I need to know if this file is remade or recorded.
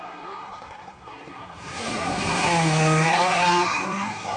remade